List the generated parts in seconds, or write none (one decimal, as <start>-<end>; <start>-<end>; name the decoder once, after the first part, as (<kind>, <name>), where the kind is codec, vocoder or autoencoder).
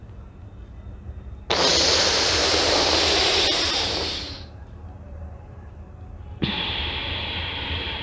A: 2.4-5.8 (vocoder, BigVGAN v2)